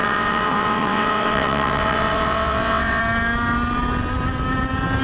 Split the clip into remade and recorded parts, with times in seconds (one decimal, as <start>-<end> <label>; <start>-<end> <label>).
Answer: 0.0-3.0 remade; 3.0-5.0 recorded